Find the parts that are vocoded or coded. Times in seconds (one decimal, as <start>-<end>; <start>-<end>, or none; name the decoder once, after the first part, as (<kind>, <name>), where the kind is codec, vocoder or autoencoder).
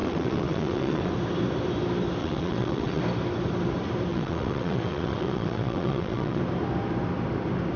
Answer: 0.0-1.1 (vocoder, WaveNeXt); 2.2-3.0; 4.1-6.4